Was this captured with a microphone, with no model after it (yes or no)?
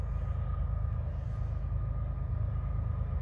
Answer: yes